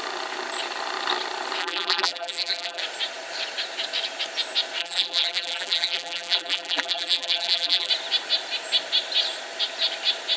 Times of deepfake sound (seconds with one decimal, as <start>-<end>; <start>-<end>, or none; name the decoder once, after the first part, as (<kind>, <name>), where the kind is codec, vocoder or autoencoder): 1.6-2.8 (vocoder, BigVGAN v2); 4.8-7.9